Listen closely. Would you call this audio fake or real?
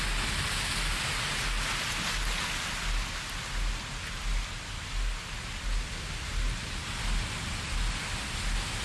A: real